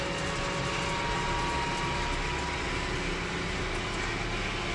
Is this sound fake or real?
real